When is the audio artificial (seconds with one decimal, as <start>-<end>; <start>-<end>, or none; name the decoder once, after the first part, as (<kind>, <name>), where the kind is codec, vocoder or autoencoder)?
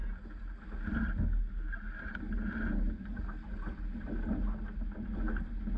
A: none